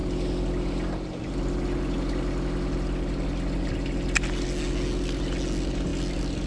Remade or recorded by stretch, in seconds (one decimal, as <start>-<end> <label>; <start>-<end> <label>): 0.0-6.5 recorded